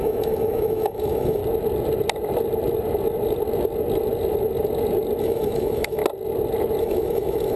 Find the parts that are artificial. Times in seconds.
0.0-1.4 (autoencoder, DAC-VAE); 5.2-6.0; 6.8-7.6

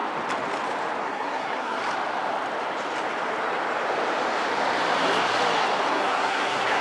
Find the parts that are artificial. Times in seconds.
1.0-1.8 (codec, SNAC); 5.9-6.8

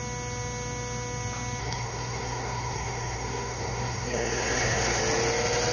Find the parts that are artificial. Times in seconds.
1.6-5.0 (codec, SNAC)

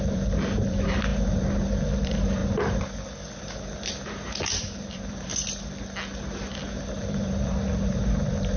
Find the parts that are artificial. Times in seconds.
0.0-2.4 (vocoder, BigVGAN v2); 3.4-5.3; 7.0-8.6

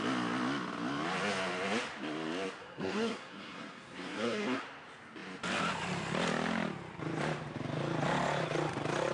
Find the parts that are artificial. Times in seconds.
2.6-4.6 (codec, SNAC)

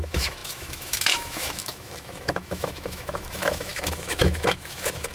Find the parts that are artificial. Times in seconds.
0.0-5.1 (autoencoder, DAC-VAE)